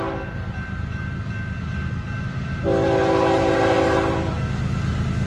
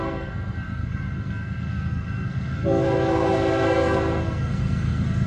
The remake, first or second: second